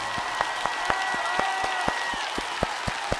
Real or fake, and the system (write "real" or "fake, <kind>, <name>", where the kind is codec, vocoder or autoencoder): real